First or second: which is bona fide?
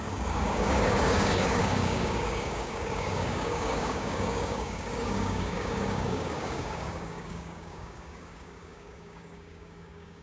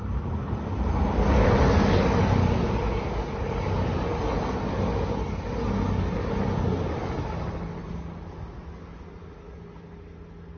second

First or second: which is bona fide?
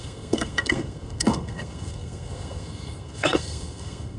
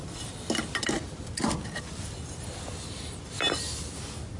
second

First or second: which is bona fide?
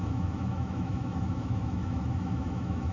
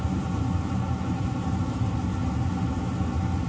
second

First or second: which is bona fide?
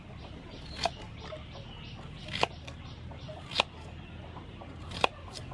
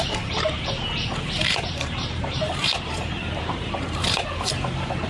first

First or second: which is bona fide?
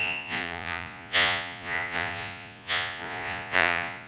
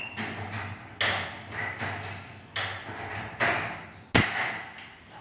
second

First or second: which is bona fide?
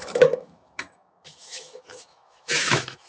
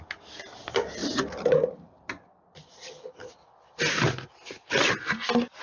second